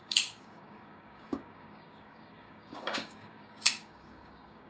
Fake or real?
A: fake